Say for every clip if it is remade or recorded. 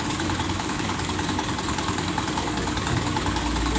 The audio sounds remade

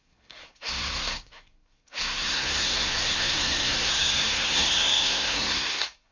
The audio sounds remade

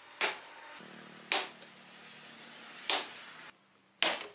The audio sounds recorded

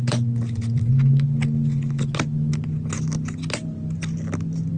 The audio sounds recorded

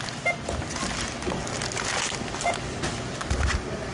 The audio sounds recorded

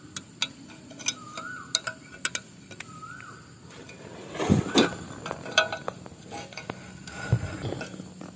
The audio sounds recorded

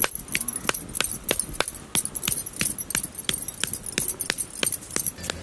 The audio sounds recorded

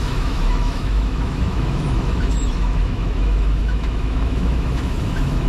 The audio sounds remade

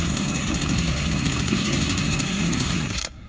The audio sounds remade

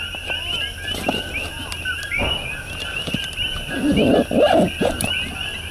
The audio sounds recorded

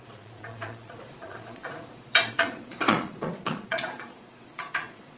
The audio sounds remade